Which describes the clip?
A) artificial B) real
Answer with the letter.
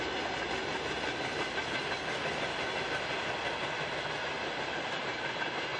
B